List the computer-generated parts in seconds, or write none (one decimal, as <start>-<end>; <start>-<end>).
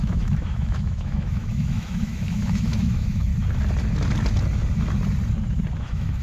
0.0-3.3; 5.8-6.2